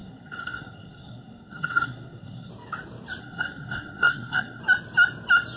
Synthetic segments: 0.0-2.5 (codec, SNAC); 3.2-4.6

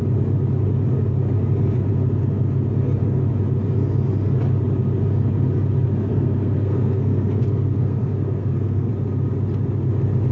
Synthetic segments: 6.1-8.9 (codec, SNAC)

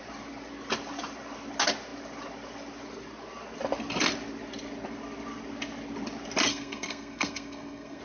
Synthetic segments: 6.5-8.0 (codec, SNAC)

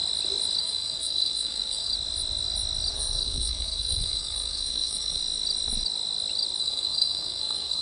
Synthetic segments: 0.6-1.9 (codec, SNAC); 2.9-5.2; 6.6-7.8

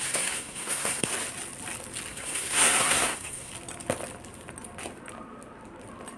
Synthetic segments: 0.0-1.1 (codec, SNAC); 2.1-3.5

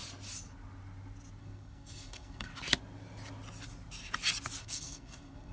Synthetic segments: 1.4-2.5 (codec, SNAC); 4.6-5.5

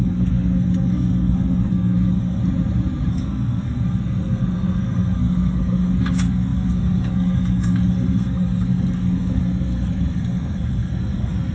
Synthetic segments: 0.0-2.4 (codec, SNAC); 3.1-11.5